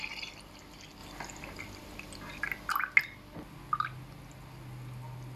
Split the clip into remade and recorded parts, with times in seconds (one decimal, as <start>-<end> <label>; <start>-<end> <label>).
0.0-5.4 recorded